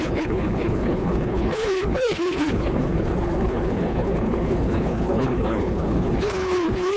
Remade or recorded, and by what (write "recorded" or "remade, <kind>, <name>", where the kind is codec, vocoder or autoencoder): remade, codec, HILCodec